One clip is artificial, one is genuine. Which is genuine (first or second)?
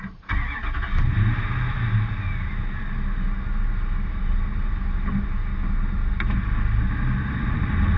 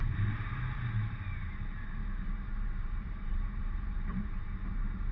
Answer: first